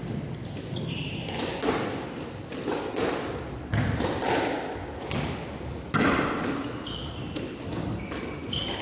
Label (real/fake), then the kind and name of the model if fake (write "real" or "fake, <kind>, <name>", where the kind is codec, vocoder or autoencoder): real